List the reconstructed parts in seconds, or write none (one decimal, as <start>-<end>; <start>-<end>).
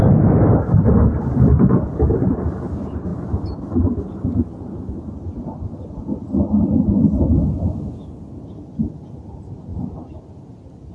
none